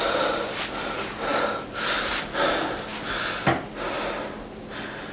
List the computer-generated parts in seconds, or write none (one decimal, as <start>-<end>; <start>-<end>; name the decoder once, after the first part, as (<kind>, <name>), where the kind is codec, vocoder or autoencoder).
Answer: none